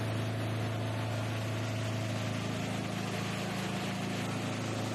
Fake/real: real